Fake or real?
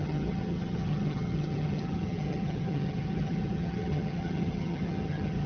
fake